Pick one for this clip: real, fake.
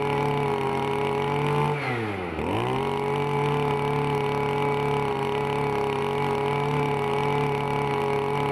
real